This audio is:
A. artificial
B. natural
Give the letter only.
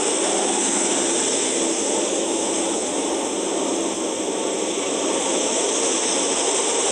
B